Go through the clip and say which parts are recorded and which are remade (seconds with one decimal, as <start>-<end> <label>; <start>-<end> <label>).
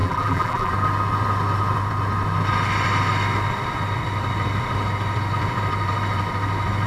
0.0-0.7 remade; 0.7-6.9 recorded